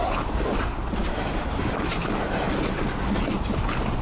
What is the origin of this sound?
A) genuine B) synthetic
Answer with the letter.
B